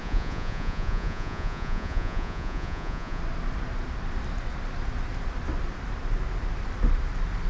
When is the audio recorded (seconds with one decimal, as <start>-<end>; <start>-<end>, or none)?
3.2-7.5